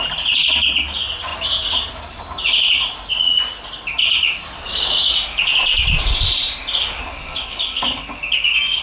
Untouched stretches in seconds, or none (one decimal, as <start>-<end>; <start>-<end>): 0.0-4.7; 5.5-6.8

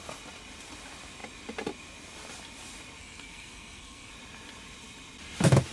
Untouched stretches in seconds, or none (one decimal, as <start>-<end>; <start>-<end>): 0.0-3.0; 4.1-5.7

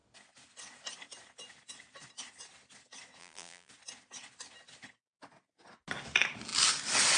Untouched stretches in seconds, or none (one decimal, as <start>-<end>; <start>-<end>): 0.0-3.2; 3.7-7.2

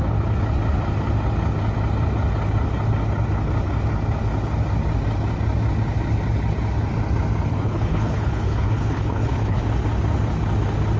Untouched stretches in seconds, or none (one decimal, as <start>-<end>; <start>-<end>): 0.0-7.5; 9.6-11.0

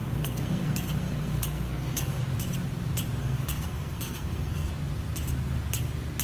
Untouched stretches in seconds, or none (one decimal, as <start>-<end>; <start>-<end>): 2.2-3.2; 4.7-6.2

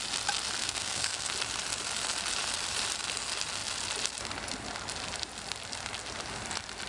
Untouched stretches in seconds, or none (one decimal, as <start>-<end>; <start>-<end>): 0.0-0.6; 1.3-6.9